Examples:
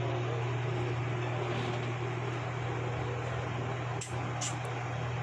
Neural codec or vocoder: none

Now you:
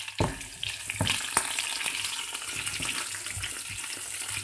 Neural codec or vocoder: none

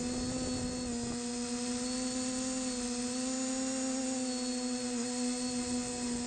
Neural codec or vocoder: none